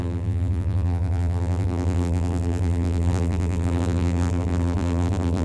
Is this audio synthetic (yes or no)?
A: yes